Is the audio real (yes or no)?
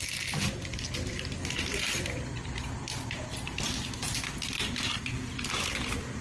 yes